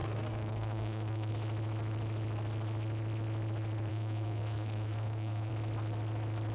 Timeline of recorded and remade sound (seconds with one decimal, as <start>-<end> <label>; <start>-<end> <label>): 0.0-1.3 remade; 1.3-3.9 recorded; 3.9-5.5 remade; 5.5-6.5 recorded